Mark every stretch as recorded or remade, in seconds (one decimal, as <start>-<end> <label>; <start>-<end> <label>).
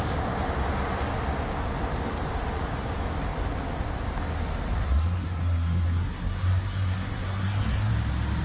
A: 0.0-4.8 recorded; 4.8-7.9 remade; 7.9-8.4 recorded